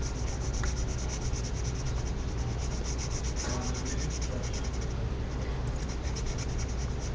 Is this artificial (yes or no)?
no